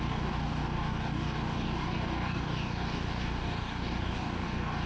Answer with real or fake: fake